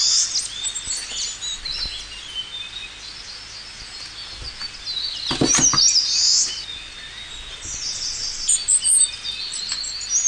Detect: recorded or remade recorded